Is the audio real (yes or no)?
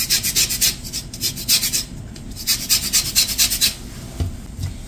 yes